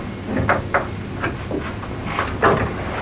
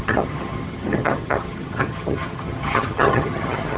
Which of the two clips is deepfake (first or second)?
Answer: second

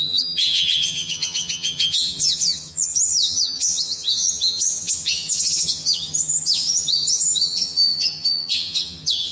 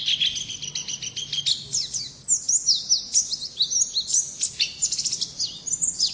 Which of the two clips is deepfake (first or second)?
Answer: first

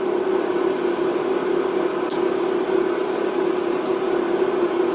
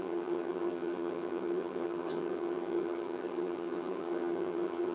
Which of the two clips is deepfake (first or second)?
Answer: second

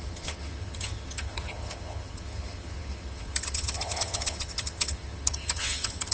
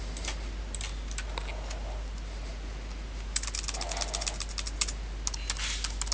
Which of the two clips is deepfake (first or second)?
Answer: first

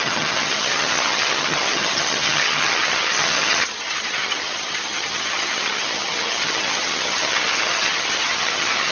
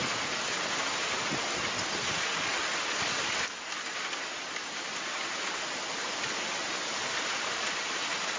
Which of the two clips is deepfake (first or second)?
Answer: first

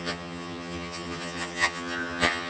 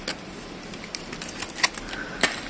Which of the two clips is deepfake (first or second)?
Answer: first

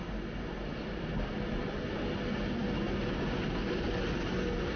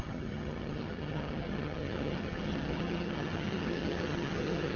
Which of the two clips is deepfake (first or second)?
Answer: second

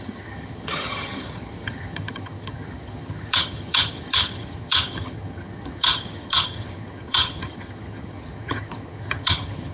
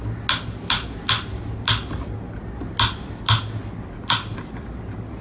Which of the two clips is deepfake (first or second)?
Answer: first